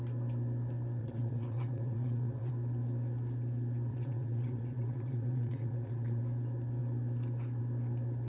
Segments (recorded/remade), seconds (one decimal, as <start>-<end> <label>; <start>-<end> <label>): 0.0-1.0 recorded; 1.0-2.5 remade; 2.5-3.9 recorded; 3.9-6.2 remade; 6.2-8.3 recorded